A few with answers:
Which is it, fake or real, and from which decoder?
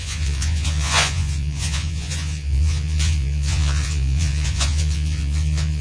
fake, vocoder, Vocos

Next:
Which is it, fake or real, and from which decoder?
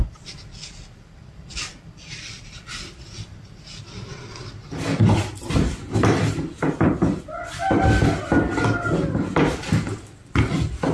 real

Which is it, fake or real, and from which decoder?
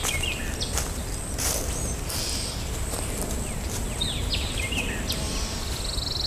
real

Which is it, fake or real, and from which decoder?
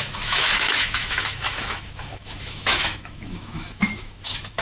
fake, autoencoder, DAC-VAE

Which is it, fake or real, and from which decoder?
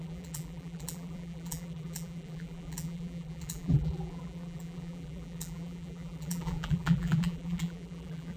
fake, vocoder, BigVGAN v2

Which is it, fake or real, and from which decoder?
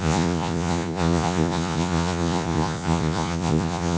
fake, vocoder, Vocos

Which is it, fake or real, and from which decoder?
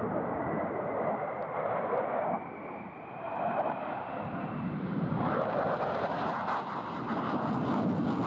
real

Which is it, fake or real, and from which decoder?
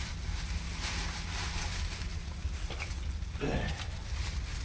real